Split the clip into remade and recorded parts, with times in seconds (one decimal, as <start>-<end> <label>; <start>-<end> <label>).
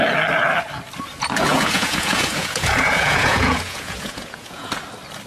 0.0-1.5 recorded; 1.5-4.7 remade; 4.7-5.3 recorded